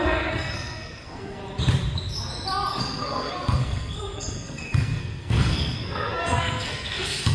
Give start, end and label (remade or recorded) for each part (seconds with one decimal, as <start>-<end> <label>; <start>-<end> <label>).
0.0-1.4 remade; 1.4-2.8 recorded; 2.8-7.3 remade